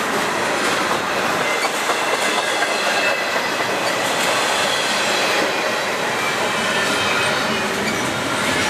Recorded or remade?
recorded